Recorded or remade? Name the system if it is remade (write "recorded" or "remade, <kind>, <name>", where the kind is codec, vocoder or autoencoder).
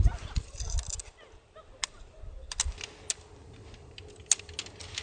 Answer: recorded